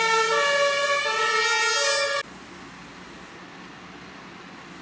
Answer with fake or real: real